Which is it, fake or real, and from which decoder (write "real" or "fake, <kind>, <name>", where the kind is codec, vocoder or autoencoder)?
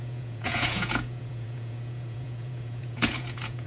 fake, vocoder, Vocos